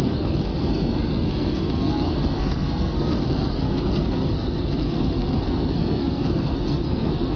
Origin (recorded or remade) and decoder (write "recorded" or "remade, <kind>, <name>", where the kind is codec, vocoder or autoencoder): remade, codec, SNAC